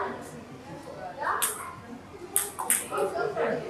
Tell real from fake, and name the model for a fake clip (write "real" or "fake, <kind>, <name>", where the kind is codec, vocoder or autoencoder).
real